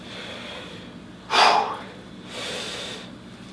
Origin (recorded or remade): recorded